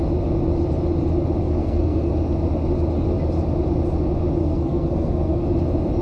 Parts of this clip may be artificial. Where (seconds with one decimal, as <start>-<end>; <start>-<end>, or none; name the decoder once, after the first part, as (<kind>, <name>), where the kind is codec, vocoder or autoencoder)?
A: 1.4-2.1 (codec, SNAC); 4.4-5.4